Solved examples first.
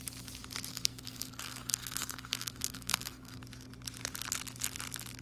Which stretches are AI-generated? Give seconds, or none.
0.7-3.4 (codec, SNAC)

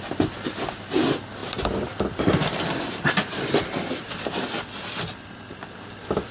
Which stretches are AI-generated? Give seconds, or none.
none

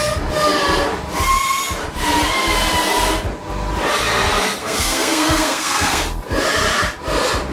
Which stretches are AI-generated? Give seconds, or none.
4.6-6.0 (codec, SNAC)

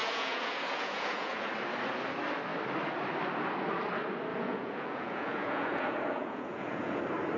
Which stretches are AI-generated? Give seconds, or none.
0.0-1.5 (vocoder, Vocos); 4.3-7.0